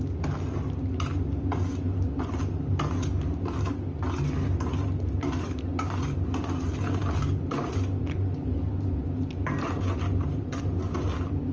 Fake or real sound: real